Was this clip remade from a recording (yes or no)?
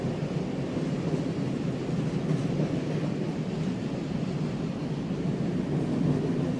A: no